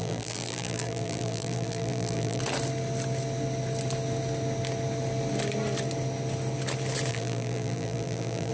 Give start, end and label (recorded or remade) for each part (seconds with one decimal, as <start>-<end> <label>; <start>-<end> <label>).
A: 0.0-2.4 remade; 2.4-7.1 recorded; 7.1-8.5 remade